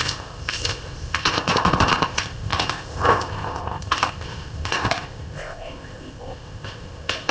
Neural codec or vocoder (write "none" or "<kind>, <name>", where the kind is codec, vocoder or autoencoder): codec, ZipCodec